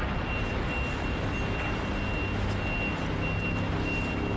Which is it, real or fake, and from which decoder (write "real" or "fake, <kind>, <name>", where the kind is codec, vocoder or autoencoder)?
real